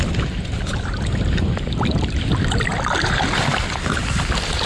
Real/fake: real